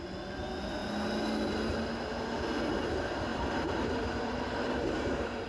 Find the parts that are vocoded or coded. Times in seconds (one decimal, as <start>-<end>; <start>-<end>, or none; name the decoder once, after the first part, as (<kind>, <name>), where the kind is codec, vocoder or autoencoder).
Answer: 3.3-5.5 (vocoder, BigVGAN v2)